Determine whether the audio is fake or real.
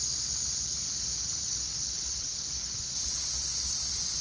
real